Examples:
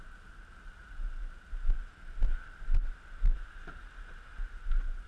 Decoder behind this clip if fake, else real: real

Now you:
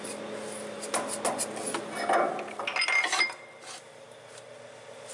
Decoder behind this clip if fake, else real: real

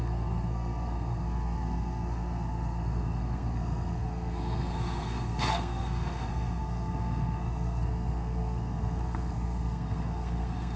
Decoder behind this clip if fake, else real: fake, codec, SNAC